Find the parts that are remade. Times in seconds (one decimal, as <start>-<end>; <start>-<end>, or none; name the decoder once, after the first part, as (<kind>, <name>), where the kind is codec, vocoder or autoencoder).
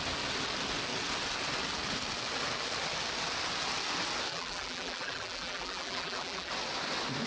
4.3-6.5 (vocoder, BigVGAN v2)